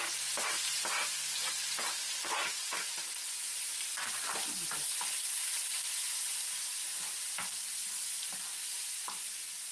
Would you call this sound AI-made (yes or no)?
no